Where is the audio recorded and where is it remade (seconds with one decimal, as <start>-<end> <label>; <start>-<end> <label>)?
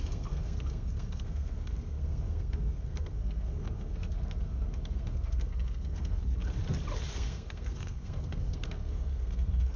0.0-6.2 remade; 6.2-7.1 recorded; 7.1-9.8 remade